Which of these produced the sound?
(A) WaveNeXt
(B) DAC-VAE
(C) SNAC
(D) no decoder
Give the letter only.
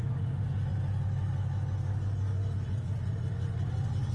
D